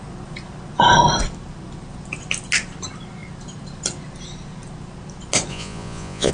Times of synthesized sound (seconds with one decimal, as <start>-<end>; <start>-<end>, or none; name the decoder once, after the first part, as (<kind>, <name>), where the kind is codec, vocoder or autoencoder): 5.5-6.3 (vocoder, Vocos)